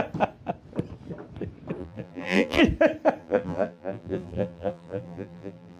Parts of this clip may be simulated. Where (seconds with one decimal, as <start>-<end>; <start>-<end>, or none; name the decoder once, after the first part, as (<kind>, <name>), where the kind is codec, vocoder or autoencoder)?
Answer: 1.8-2.6 (vocoder, BigVGAN v2); 3.2-5.8

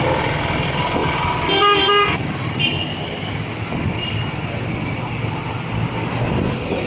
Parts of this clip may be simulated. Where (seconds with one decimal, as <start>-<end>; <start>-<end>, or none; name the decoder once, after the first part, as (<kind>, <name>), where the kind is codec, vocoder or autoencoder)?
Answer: 0.0-1.0 (vocoder, BigVGAN v2); 3.3-6.9

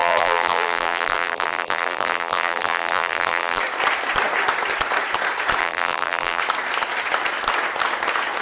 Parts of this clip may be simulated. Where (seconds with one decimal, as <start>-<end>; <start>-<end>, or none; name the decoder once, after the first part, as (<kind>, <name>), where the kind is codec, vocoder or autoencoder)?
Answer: 0.0-3.6 (vocoder, BigVGAN v2); 5.6-6.4